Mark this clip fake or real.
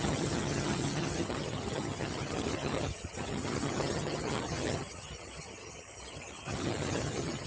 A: fake